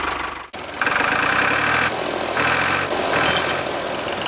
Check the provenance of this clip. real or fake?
real